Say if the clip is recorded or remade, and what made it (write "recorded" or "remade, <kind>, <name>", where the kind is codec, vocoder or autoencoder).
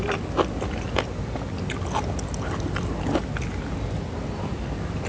recorded